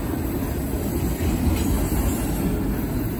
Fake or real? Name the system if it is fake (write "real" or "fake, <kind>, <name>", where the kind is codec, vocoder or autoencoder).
real